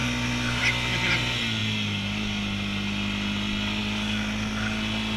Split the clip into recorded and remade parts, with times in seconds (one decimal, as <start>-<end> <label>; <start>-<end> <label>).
0.0-5.2 recorded